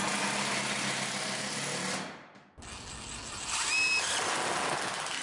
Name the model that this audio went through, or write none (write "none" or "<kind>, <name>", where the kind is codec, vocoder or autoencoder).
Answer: none